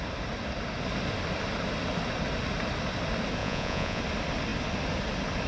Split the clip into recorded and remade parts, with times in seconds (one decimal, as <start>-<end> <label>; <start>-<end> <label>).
0.0-3.4 recorded; 3.4-4.0 remade; 4.0-5.5 recorded